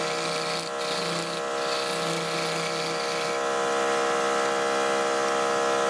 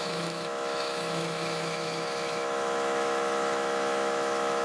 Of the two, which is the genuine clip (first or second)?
first